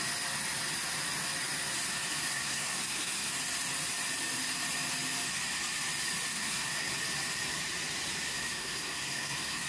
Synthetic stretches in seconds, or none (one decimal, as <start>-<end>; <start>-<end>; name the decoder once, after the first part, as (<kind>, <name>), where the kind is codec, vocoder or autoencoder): 2.3-3.3 (codec, SNAC); 6.3-6.9; 8.3-9.7